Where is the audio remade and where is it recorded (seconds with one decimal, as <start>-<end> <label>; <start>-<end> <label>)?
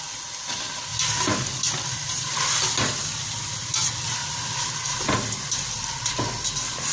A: 0.0-6.9 recorded